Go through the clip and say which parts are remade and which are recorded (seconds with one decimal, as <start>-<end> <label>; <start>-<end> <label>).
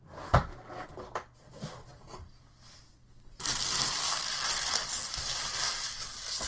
0.0-6.5 recorded